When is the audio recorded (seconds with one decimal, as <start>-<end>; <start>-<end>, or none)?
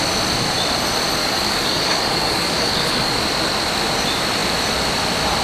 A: 0.0-1.2; 3.1-5.4